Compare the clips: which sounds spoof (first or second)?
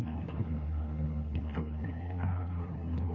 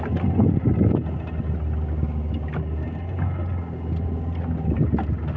first